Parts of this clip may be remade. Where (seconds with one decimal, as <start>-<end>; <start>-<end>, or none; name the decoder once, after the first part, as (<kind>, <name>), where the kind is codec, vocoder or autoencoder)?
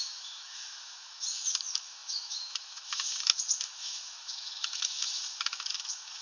0.0-6.2 (autoencoder, DAC-VAE)